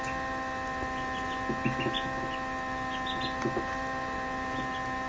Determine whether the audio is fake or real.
real